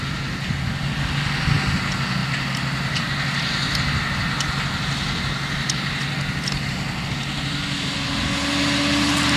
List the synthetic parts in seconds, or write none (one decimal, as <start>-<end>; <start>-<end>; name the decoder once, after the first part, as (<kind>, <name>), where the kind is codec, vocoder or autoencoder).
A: none